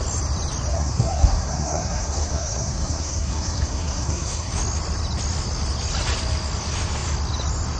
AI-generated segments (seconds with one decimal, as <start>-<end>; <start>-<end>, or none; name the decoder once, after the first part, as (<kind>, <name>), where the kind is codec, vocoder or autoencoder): 0.7-4.5 (codec, SNAC)